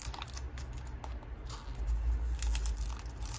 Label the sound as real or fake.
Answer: real